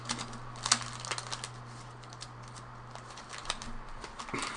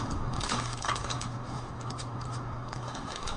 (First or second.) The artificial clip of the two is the second